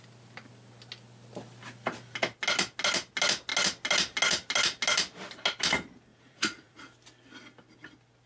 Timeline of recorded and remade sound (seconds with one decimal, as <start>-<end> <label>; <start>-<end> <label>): 0.0-6.1 recorded; 6.1-6.8 remade; 6.8-8.3 recorded